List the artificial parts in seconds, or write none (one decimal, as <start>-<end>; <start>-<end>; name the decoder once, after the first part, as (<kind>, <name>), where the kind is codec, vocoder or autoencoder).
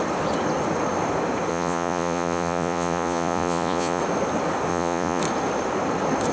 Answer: 1.5-4.0 (vocoder, Vocos); 4.7-5.2